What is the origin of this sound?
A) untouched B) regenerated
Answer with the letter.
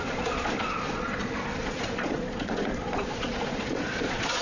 B